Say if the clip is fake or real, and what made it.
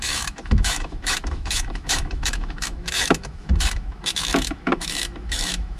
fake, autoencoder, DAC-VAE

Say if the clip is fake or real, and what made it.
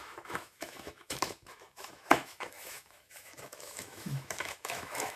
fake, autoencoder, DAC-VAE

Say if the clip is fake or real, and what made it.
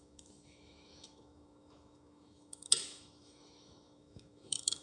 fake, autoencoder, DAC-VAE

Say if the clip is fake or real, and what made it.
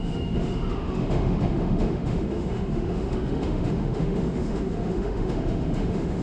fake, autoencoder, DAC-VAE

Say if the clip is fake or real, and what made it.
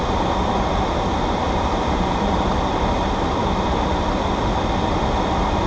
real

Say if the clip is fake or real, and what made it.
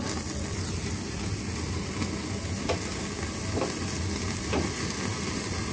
real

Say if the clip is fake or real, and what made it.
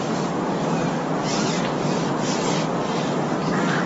real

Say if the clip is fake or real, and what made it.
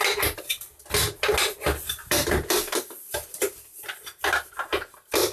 real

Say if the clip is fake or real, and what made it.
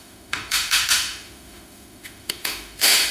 fake, autoencoder, DAC-VAE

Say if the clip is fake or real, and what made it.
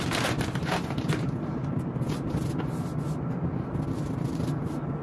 real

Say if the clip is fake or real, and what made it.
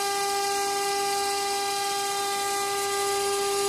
real